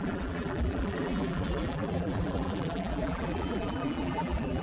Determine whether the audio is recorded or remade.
remade